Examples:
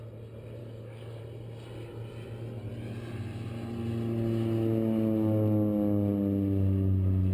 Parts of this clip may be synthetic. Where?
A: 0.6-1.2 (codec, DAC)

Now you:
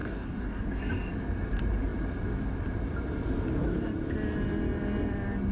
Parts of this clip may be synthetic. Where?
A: 0.0-0.8 (codec, DAC)

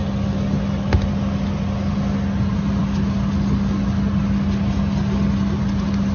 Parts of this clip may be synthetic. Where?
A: none